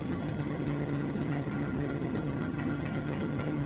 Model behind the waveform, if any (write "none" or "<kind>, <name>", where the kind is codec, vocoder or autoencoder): vocoder, HiFi-GAN